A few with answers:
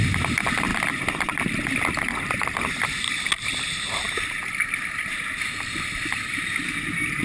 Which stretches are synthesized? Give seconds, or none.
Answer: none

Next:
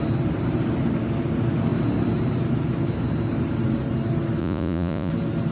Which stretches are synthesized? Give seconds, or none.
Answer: 4.4-5.1

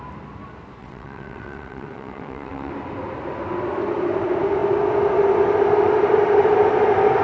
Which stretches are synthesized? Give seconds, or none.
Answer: 0.8-2.7

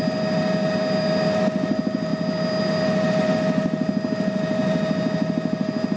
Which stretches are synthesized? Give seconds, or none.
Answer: none

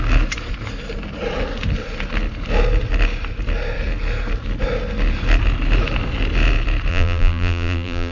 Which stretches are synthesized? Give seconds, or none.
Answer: 6.9-8.1

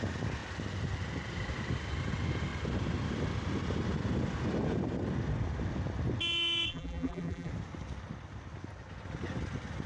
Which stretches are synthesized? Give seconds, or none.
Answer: 6.7-7.5